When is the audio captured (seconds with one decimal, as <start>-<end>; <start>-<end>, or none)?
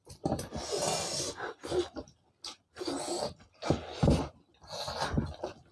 0.0-5.7